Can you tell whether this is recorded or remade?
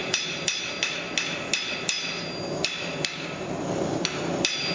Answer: recorded